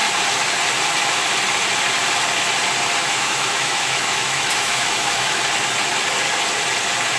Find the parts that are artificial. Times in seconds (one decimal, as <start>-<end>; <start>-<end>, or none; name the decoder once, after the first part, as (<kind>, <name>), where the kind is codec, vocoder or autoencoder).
3.0-5.4 (autoencoder, DAC-VAE)